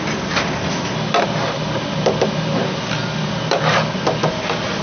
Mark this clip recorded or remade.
recorded